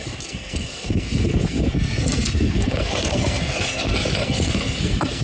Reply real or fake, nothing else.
fake